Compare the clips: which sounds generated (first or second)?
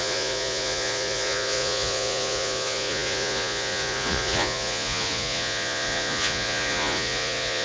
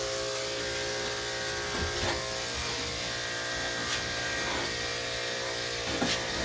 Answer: first